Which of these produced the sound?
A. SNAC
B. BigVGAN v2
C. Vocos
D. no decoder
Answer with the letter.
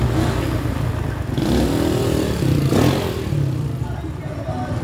D